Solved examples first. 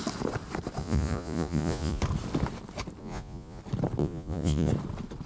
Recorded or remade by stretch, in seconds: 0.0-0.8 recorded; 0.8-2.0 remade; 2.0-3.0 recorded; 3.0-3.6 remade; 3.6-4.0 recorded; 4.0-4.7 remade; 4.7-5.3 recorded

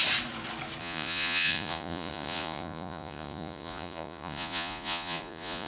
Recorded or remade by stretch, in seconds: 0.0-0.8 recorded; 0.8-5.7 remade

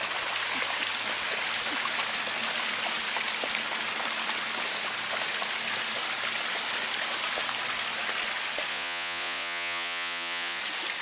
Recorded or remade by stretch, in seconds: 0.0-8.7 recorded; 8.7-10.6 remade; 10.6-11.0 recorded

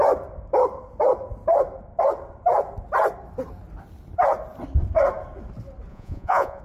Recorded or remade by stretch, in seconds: 0.0-5.9 recorded; 5.9-6.6 remade

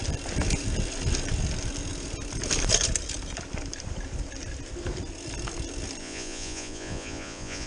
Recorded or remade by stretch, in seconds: 0.0-6.0 recorded; 6.0-7.7 remade

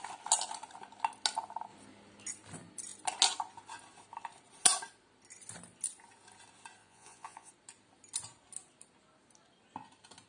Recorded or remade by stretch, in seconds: 0.0-6.8 recorded; 6.8-7.5 remade; 7.5-10.3 recorded

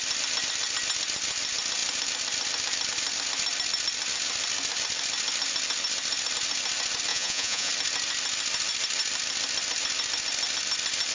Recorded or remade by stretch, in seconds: 0.0-7.1 recorded; 7.1-7.7 remade; 7.7-11.1 recorded

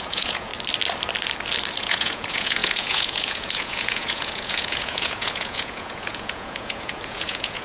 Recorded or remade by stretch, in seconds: 0.0-0.5 remade; 0.5-1.8 recorded; 1.8-7.6 remade